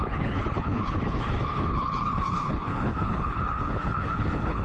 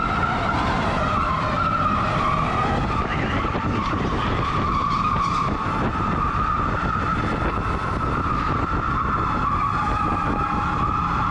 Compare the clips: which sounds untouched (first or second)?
second